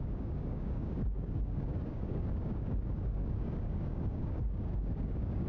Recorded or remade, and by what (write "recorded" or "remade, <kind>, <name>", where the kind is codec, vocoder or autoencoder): remade, codec, DAC